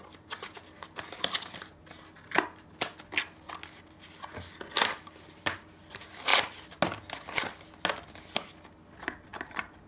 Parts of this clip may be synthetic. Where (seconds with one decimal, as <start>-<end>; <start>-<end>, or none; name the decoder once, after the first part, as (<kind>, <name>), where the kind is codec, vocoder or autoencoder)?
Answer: 6.3-6.8 (vocoder, BigVGAN v2); 9.3-9.9